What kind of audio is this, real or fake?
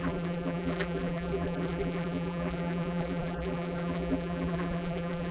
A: fake